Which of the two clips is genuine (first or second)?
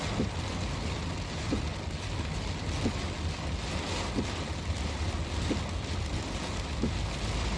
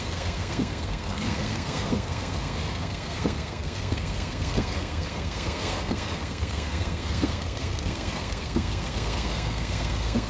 first